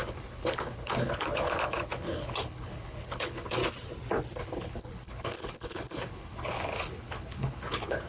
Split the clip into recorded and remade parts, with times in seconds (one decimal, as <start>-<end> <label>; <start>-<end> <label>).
0.0-3.6 remade; 3.6-4.4 recorded; 4.4-8.1 remade